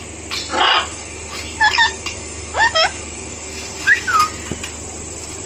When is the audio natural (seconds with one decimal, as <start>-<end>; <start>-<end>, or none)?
0.0-0.9; 4.2-5.5